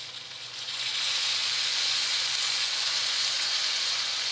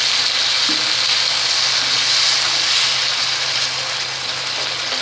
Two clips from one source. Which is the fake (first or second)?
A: first